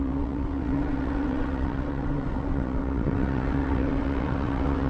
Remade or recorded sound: remade